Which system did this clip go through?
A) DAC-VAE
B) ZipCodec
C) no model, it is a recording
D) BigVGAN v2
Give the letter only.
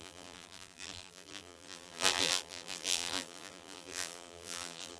D